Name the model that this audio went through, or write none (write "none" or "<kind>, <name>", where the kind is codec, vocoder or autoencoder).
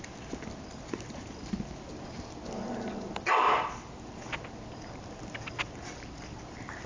none